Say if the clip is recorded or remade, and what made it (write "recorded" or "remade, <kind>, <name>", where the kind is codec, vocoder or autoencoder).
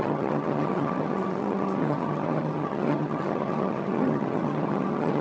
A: remade, vocoder, HiFi-GAN